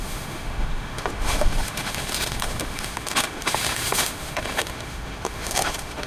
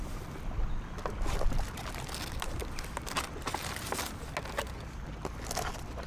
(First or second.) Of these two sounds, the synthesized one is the first